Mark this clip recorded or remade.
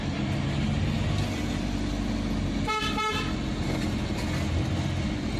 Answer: recorded